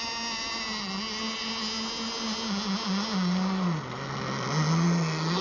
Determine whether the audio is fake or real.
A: real